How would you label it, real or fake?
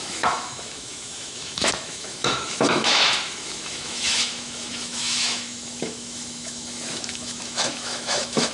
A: fake